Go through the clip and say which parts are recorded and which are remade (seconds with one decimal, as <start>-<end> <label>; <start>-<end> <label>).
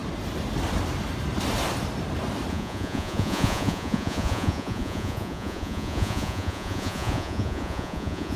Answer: 0.0-2.5 recorded; 2.5-8.4 remade